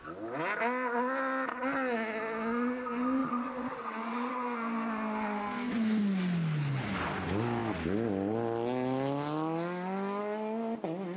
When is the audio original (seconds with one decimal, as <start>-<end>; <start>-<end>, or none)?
0.0-3.2; 4.3-11.2